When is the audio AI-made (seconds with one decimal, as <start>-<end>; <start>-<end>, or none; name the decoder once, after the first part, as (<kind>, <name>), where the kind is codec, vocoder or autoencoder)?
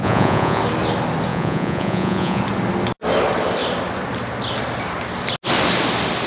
0.0-0.6 (vocoder, Vocos); 1.3-2.4